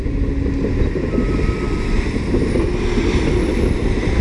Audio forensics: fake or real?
real